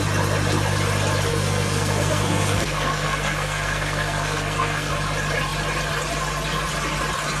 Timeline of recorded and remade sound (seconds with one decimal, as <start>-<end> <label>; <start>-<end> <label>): 0.0-1.3 recorded; 1.3-4.9 remade; 4.9-7.4 recorded